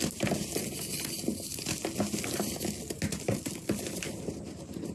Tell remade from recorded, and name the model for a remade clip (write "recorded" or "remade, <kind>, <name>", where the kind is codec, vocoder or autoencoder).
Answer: recorded